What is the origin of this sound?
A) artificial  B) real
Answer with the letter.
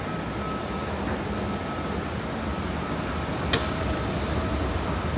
B